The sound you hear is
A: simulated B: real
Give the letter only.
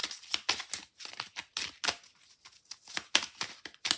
B